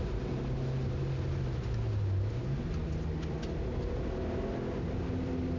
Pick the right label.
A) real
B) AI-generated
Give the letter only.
A